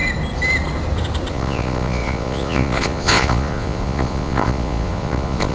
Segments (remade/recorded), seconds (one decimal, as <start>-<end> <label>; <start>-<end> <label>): 0.0-1.3 recorded; 1.3-5.5 remade